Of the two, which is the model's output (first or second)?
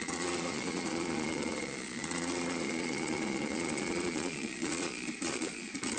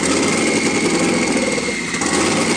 first